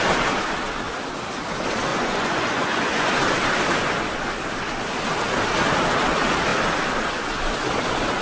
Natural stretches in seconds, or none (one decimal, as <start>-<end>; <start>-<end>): 0.0-1.9; 3.1-8.2